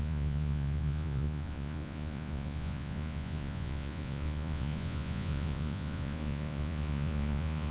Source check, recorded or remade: remade